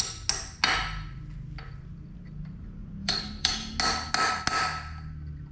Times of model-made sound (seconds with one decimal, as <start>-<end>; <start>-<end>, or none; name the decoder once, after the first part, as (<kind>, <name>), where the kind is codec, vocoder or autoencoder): 3.0-3.8 (codec, DAC)